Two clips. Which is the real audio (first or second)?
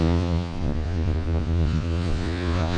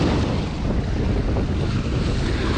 second